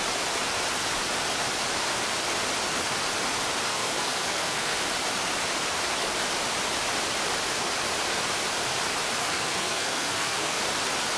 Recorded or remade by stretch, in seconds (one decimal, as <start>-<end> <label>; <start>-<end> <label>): 0.0-3.7 recorded; 3.7-4.8 remade; 4.8-9.2 recorded; 9.2-10.6 remade; 10.6-11.2 recorded